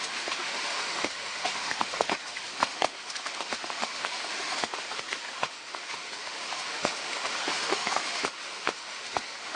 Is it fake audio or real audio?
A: fake